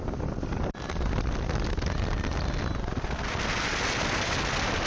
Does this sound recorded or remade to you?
recorded